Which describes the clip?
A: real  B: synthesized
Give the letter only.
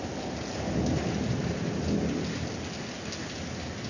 A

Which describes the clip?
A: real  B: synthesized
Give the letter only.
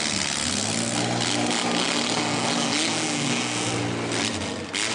A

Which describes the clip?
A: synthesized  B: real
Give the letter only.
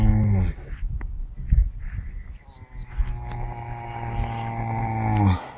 B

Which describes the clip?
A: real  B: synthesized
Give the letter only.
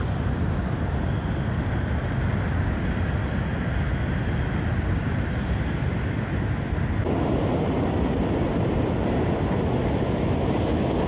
A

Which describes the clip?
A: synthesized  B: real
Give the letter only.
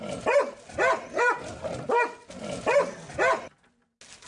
B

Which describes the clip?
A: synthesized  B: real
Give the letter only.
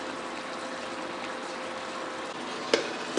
B